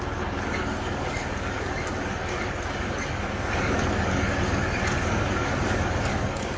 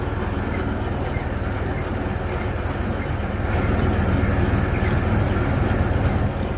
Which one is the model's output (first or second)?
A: first